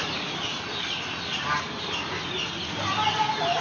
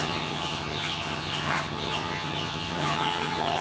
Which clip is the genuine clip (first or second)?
first